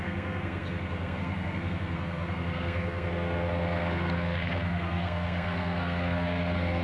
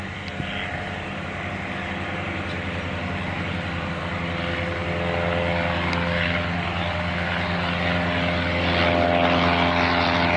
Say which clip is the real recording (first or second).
second